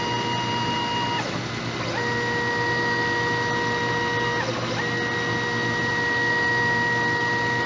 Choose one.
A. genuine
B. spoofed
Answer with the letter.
A